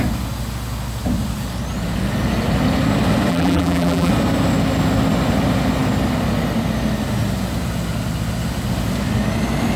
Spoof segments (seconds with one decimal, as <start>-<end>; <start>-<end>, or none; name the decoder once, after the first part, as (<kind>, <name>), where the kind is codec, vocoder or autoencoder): 3.3-4.1 (vocoder, BigVGAN v2)